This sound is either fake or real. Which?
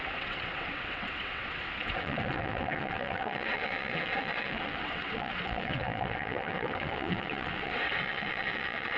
fake